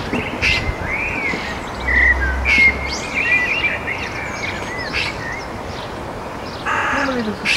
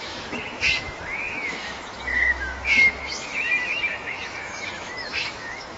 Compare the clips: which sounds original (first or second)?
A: first